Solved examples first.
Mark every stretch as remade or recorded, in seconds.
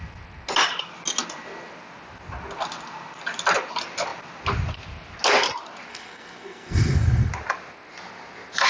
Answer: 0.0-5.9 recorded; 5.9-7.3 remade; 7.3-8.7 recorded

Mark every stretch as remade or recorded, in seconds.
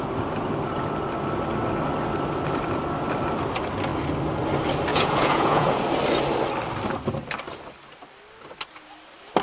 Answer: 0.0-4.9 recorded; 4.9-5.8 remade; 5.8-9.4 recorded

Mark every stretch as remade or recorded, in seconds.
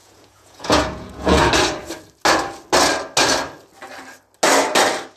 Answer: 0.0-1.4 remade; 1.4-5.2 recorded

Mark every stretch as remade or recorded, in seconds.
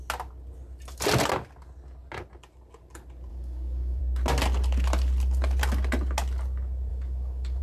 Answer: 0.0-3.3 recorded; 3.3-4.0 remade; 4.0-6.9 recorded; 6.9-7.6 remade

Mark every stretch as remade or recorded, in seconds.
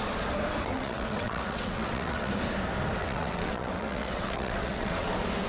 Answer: 0.0-0.7 recorded; 0.7-2.3 remade; 2.3-3.0 recorded; 3.0-5.1 remade; 5.1-5.5 recorded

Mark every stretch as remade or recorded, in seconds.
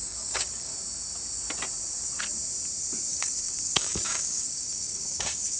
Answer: 0.0-0.7 remade; 0.7-3.1 recorded; 3.1-5.6 remade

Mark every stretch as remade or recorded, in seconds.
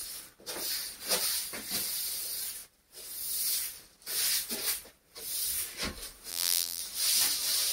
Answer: 0.0-6.3 recorded; 6.3-6.8 remade; 6.8-7.7 recorded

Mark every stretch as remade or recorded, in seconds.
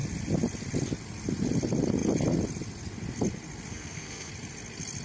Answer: 0.0-3.7 recorded; 3.7-4.3 remade; 4.3-5.0 recorded